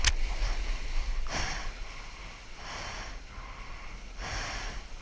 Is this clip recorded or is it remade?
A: recorded